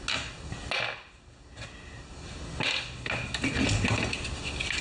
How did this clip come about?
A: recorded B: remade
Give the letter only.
A